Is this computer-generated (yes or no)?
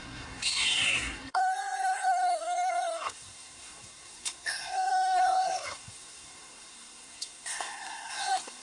yes